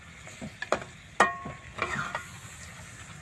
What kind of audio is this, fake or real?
real